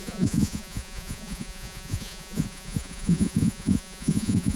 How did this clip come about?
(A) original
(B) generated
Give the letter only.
B